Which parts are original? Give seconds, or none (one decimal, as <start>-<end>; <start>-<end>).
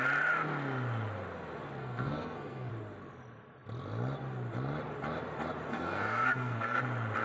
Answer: 0.0-1.8; 2.7-5.7; 6.8-7.2